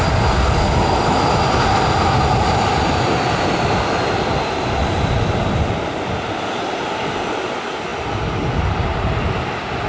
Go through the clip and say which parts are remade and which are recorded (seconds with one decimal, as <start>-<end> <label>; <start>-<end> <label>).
0.0-9.9 recorded